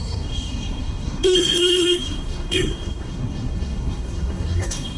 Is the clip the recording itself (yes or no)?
no